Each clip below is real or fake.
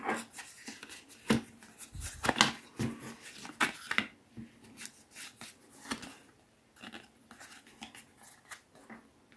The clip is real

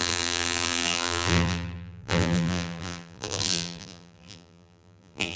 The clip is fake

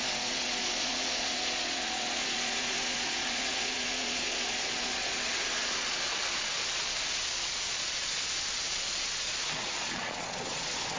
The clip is fake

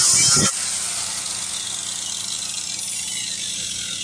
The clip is real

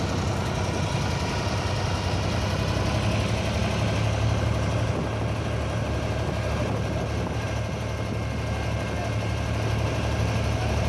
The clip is real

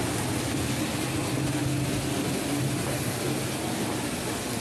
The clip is real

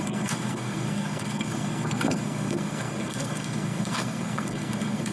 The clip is fake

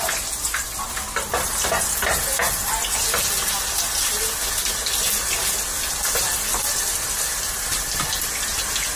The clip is real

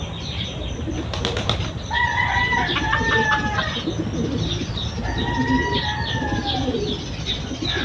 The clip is real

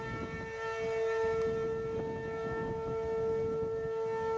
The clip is real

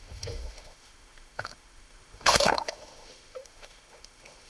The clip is fake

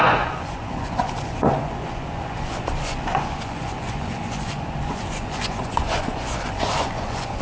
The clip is fake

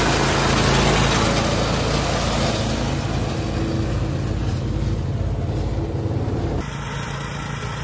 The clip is real